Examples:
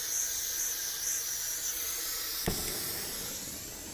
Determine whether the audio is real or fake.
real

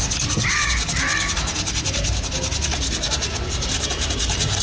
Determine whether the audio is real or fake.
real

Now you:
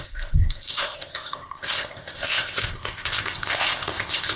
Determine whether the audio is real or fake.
fake